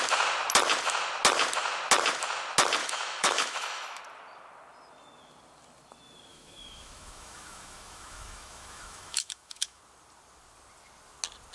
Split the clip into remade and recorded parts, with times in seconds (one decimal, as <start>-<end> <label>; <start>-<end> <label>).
0.0-2.8 recorded; 2.8-4.0 remade; 4.0-6.3 recorded; 6.3-9.8 remade; 9.8-11.5 recorded